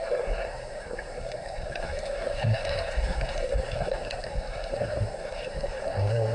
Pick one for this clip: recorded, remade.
remade